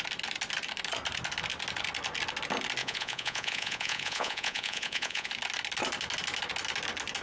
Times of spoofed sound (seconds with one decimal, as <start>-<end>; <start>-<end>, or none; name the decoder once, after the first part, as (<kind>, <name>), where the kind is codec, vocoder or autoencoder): 2.8-5.3 (vocoder, Vocos)

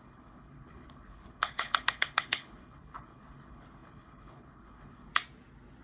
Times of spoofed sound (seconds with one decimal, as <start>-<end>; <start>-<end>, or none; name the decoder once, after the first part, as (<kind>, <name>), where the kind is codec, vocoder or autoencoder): 0.0-5.1 (codec, HILCodec)

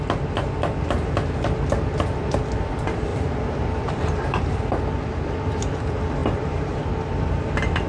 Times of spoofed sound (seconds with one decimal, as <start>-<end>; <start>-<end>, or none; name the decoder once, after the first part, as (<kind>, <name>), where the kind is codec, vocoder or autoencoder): 3.1-4.4 (vocoder, BigVGAN v2); 6.2-6.8

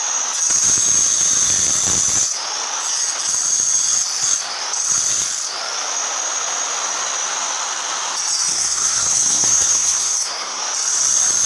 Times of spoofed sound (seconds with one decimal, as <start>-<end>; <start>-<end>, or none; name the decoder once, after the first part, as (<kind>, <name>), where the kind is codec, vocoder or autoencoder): 8.5-10.6 (codec, SNAC)

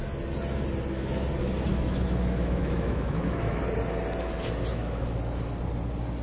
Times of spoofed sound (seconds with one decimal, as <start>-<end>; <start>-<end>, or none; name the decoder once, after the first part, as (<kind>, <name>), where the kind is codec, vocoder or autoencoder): 1.7-3.6 (autoencoder, DAC-VAE); 4.7-5.2